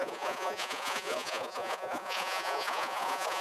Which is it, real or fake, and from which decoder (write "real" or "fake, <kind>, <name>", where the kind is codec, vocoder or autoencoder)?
fake, vocoder, Vocos